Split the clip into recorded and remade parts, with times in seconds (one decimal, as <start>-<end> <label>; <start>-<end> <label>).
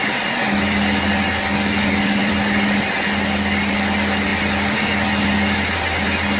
0.0-2.2 recorded; 2.2-2.9 remade; 2.9-6.4 recorded